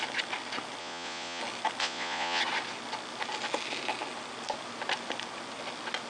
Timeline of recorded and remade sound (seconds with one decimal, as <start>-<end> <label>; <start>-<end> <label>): 0.0-0.8 recorded; 0.8-1.4 remade; 1.4-1.8 recorded; 1.8-2.4 remade; 2.4-6.1 recorded